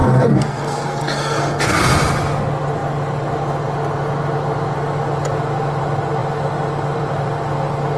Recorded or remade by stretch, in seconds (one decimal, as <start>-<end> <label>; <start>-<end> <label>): 0.0-1.8 remade; 1.8-8.0 recorded